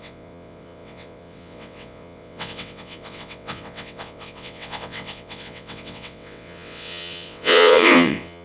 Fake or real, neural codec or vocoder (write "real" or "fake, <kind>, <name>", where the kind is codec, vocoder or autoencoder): fake, vocoder, WaveNeXt